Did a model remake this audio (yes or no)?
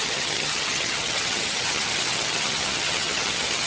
yes